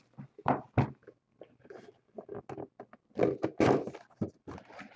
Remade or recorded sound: recorded